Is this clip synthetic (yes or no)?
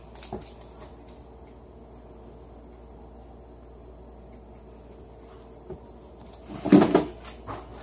no